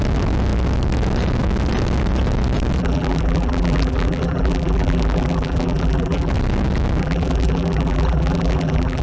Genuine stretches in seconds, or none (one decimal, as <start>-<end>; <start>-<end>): 0.0-2.8; 6.3-7.0